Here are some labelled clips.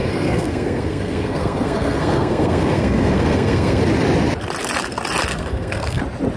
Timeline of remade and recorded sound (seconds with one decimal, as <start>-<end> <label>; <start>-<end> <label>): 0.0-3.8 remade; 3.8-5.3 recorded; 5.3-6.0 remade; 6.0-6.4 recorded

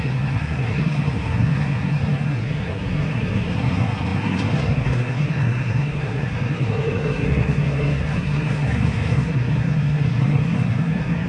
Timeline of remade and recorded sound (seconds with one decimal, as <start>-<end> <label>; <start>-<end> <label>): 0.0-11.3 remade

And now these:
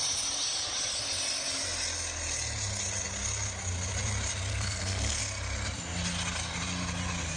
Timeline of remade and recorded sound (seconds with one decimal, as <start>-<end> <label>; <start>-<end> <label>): 0.0-4.5 recorded; 4.5-5.2 remade; 5.2-7.4 recorded

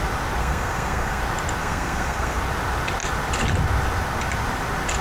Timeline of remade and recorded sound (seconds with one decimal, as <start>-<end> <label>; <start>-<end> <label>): 0.0-0.4 recorded; 0.4-1.2 remade; 1.2-1.6 recorded; 1.6-2.4 remade; 2.4-5.0 recorded